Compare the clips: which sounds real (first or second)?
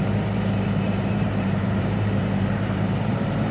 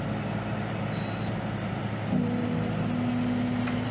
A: second